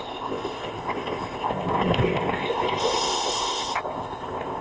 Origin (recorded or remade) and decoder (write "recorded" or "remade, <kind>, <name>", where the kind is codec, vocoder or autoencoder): remade, codec, ZipCodec